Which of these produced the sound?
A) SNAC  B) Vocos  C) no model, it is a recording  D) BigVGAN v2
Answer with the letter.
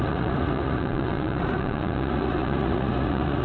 B